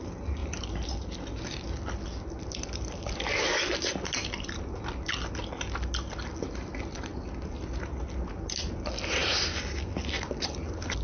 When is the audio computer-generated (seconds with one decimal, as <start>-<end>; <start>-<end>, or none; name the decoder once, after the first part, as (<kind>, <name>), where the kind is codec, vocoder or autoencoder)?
0.4-0.9 (vocoder, BigVGAN v2)